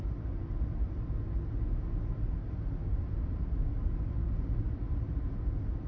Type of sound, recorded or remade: recorded